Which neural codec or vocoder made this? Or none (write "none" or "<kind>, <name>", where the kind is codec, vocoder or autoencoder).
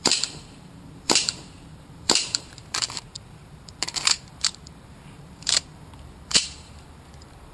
vocoder, BigVGAN v2